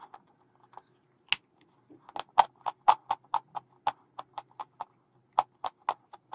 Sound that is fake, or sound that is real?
real